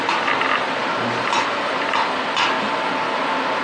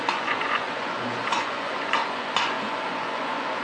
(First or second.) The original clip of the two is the first